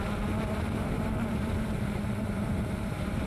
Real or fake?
fake